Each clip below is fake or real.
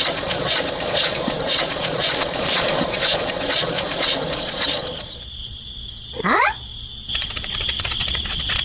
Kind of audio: fake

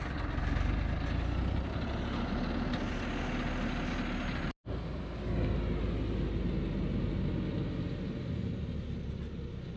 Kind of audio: real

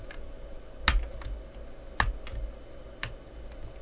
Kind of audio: real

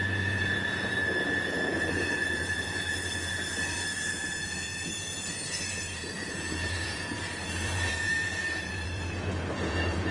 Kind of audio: fake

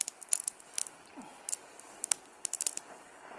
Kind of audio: real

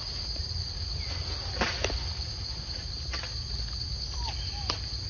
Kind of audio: real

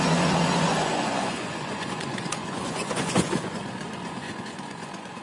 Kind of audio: fake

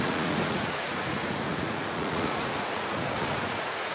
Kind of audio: fake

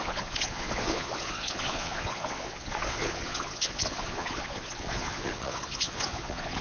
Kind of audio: fake